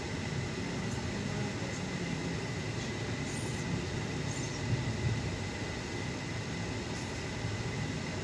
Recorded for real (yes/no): yes